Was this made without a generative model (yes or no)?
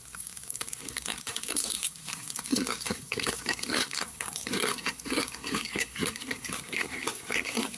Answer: no